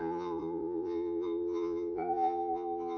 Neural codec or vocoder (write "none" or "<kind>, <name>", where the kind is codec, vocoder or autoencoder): vocoder, Vocos